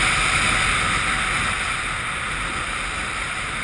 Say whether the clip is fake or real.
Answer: real